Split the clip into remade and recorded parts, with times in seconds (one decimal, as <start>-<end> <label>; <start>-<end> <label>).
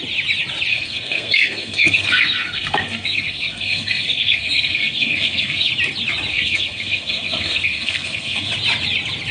0.0-0.7 recorded; 0.7-5.7 remade; 5.7-6.3 recorded; 6.3-8.5 remade; 8.5-9.3 recorded